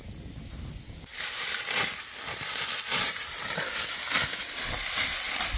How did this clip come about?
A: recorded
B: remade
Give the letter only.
A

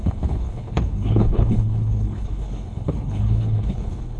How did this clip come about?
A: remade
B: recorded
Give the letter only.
A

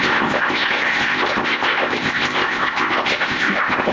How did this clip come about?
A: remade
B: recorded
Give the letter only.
A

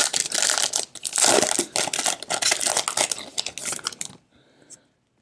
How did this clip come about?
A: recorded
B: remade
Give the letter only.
A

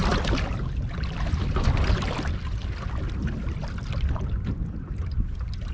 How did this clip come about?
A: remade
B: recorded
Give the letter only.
B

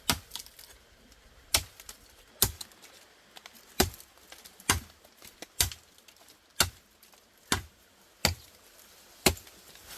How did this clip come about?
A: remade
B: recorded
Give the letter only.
B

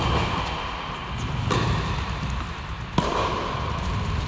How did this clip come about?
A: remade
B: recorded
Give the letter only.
B